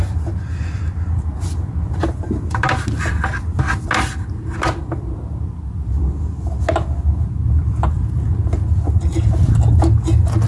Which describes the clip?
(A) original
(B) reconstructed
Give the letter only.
A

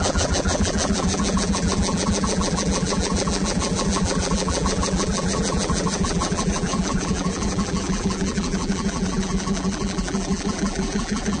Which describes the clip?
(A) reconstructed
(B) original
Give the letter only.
A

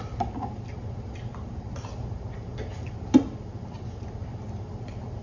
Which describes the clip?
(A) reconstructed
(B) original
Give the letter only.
B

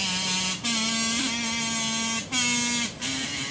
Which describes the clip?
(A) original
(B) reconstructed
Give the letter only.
A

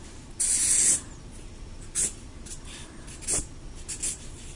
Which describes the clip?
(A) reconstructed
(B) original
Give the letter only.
B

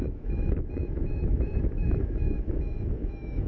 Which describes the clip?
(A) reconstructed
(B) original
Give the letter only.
A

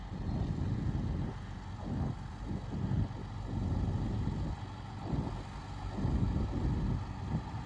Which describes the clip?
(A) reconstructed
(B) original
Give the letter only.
B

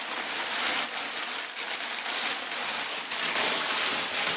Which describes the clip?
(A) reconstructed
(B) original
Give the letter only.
B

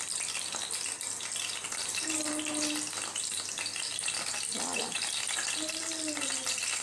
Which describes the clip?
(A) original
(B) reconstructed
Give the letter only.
B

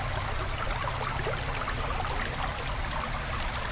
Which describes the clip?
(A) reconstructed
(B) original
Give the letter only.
B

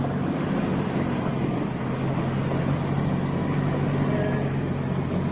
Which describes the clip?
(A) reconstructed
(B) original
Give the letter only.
B